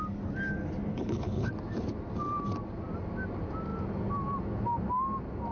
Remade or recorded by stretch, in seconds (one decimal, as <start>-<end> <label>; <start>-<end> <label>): 0.0-0.9 recorded; 0.9-1.5 remade; 1.5-5.5 recorded